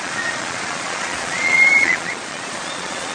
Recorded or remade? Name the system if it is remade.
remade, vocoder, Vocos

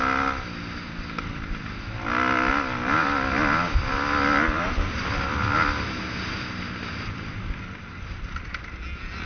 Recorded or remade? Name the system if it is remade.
recorded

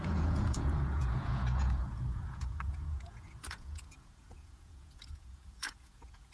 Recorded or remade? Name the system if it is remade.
remade, vocoder, Vocos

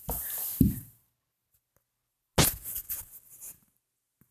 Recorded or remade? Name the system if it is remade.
recorded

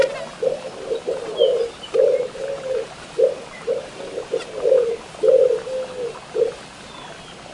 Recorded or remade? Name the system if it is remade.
recorded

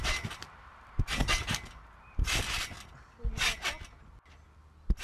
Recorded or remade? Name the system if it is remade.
recorded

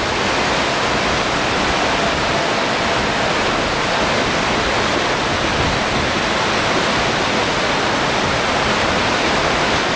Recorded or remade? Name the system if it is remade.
recorded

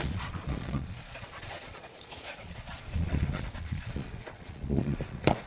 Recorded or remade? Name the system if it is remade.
remade, vocoder, Vocos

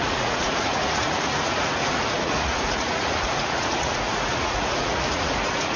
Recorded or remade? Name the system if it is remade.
remade, vocoder, Vocos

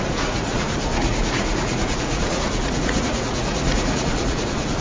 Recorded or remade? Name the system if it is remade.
remade, vocoder, Vocos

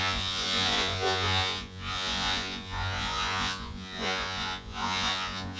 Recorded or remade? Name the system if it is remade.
remade, vocoder, Vocos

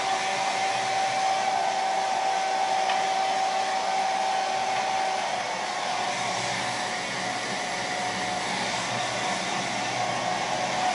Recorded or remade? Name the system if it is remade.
recorded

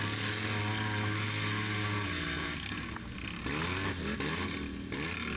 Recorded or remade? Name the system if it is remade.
recorded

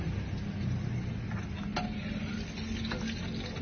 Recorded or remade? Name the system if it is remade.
recorded